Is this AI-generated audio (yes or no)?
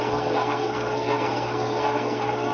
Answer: yes